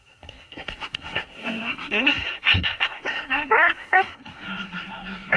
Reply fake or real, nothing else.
fake